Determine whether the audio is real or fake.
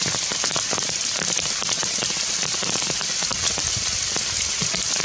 real